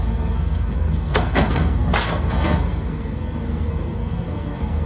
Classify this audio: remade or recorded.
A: remade